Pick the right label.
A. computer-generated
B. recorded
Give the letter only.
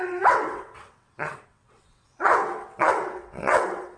A